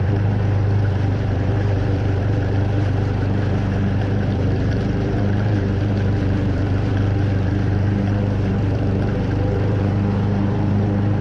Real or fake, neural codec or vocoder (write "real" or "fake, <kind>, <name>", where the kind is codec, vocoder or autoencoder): fake, vocoder, BigVGAN v2